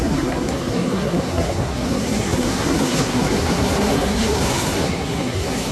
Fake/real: fake